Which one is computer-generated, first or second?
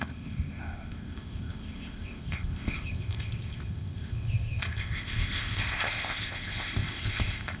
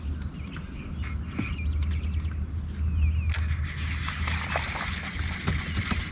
first